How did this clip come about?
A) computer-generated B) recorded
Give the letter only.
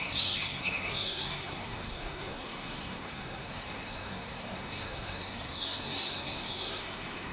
A